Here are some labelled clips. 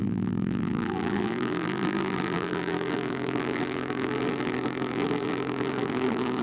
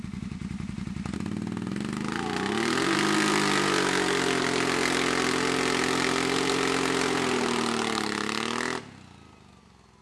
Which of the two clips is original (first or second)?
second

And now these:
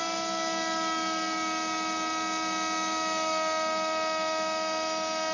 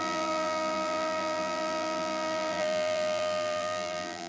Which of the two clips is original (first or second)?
first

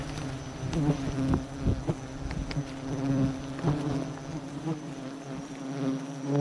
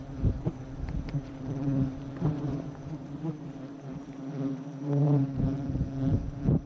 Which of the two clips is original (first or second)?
first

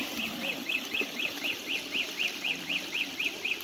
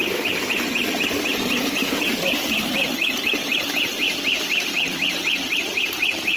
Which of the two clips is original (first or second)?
first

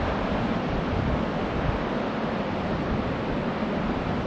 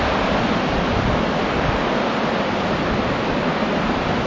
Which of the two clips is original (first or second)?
second